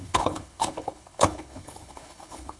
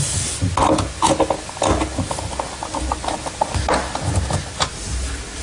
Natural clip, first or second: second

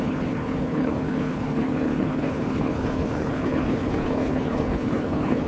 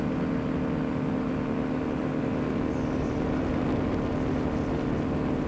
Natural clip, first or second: second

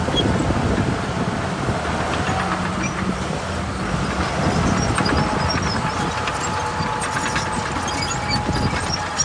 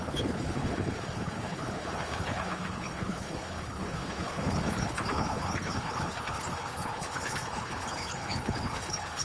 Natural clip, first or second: first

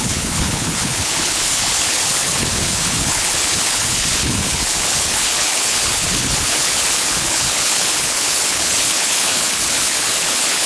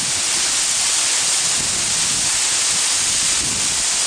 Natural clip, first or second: second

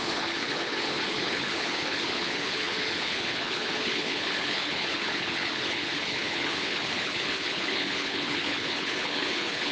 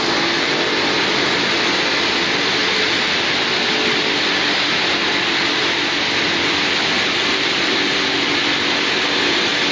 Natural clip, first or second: second